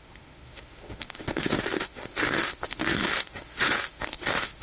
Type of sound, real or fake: fake